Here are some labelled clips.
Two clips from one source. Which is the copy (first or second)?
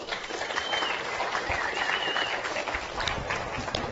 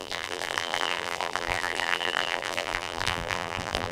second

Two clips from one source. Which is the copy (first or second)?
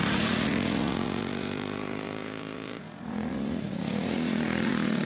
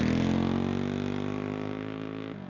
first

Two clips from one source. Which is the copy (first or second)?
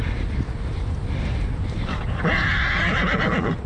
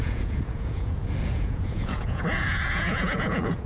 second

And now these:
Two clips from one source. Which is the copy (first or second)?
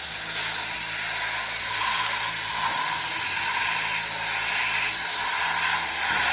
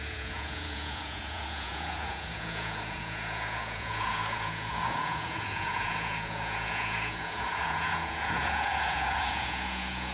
second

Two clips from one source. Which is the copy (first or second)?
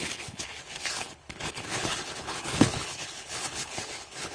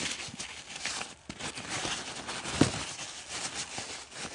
first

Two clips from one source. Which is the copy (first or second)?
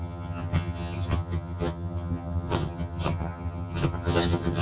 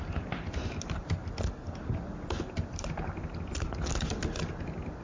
first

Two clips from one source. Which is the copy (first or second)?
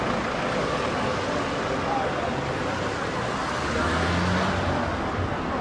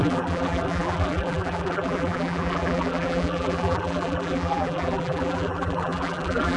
second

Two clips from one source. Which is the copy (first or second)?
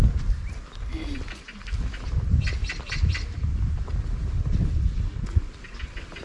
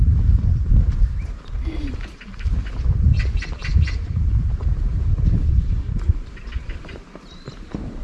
second